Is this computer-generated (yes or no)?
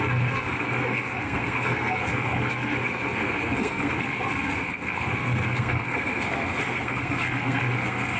yes